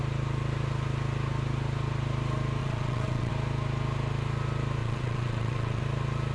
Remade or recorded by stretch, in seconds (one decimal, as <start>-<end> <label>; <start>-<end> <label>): 0.0-2.6 recorded; 2.6-3.3 remade; 3.3-4.8 recorded; 4.8-5.8 remade; 5.8-6.3 recorded